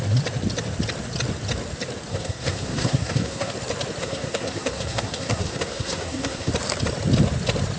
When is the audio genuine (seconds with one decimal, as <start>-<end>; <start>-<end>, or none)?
0.0-2.1; 3.5-4.0; 6.5-7.8